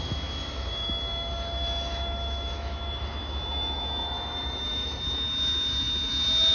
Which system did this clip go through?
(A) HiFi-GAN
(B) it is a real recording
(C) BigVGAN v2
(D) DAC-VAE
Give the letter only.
D